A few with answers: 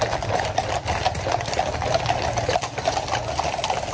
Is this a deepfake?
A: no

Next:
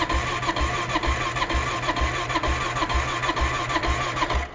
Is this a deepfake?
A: no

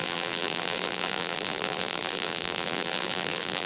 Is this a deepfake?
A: yes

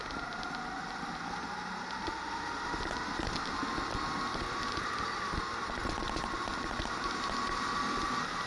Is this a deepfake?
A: no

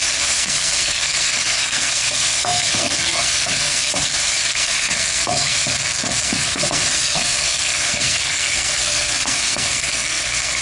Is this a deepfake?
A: yes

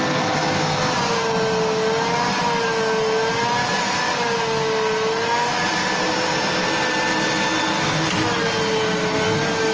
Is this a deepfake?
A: no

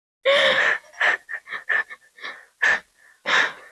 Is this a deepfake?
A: no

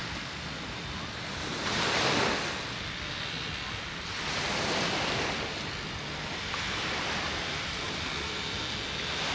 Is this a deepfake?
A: no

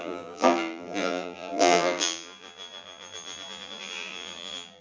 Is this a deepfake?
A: yes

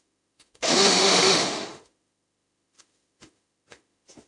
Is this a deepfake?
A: yes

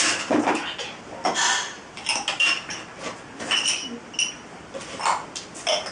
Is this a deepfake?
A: no